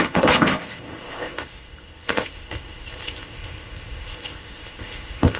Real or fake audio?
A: fake